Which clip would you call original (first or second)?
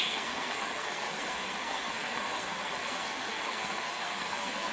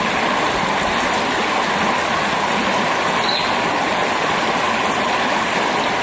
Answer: second